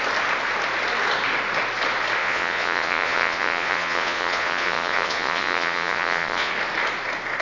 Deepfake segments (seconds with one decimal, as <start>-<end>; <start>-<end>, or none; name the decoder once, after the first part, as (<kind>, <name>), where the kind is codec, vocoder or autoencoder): 2.2-6.5 (vocoder, Vocos)